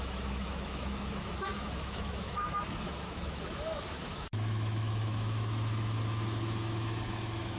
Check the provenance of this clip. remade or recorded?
remade